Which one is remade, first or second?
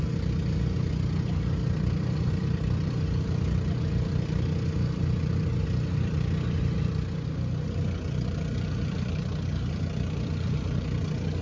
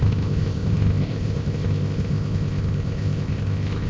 second